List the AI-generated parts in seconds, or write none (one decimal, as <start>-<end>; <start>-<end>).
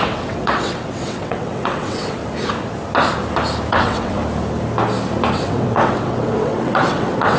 0.0-2.2; 3.7-4.2; 5.3-7.4